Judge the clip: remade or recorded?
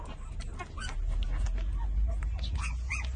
recorded